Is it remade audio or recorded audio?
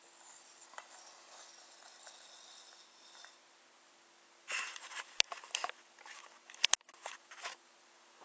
recorded